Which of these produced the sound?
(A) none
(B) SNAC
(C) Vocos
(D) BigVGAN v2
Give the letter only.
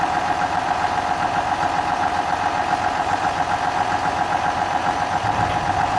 D